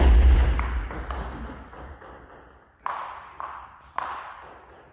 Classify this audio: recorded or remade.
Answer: recorded